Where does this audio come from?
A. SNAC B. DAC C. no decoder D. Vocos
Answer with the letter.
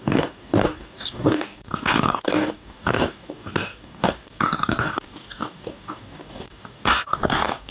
B